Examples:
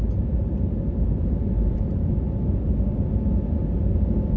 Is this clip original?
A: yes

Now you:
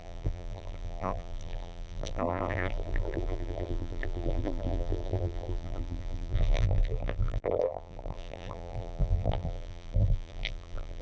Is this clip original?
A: no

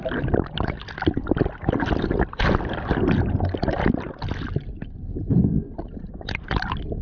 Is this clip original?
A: yes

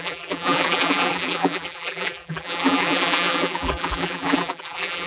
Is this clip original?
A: no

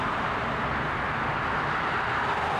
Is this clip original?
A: yes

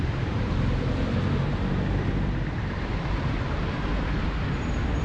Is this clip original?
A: no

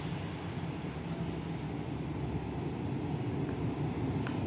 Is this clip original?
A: yes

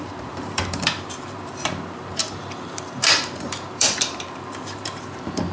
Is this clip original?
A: no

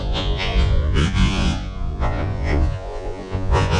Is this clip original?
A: no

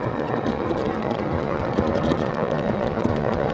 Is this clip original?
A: no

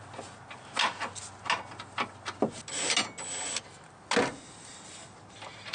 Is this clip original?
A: yes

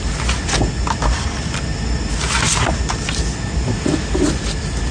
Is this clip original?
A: yes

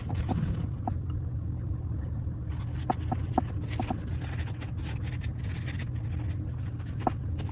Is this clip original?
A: yes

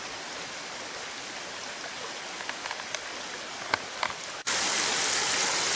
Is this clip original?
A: yes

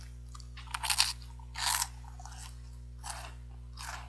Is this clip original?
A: yes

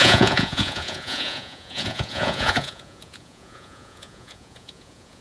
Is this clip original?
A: no